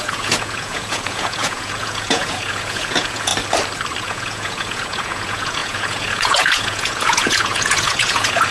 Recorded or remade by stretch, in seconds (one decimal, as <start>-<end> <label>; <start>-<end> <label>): 0.0-3.3 remade; 3.3-4.0 recorded; 4.0-8.5 remade